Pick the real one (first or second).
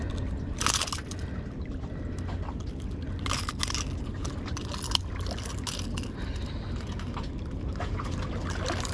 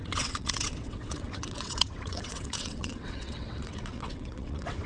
first